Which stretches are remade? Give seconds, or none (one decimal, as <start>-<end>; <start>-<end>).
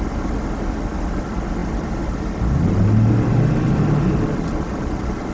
none